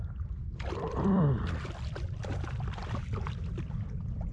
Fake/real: fake